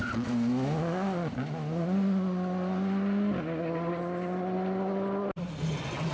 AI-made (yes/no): no